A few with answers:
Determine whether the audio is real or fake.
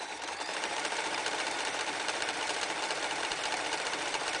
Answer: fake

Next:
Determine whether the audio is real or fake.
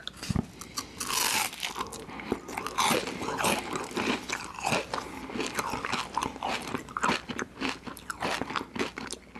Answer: real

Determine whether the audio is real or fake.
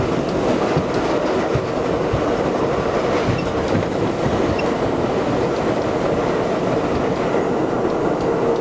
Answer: real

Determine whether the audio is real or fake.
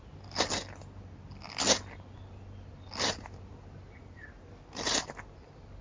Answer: real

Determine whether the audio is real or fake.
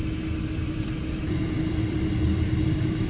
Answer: real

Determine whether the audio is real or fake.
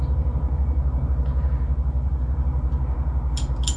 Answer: fake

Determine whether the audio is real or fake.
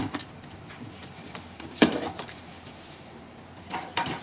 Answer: fake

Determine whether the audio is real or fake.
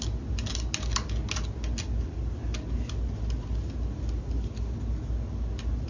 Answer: real